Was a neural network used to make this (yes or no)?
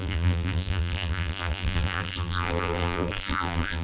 yes